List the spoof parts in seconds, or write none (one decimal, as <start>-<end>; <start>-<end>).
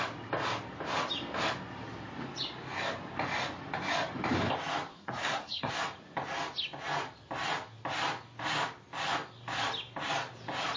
4.9-5.7